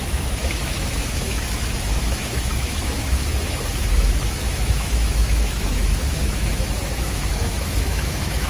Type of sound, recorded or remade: remade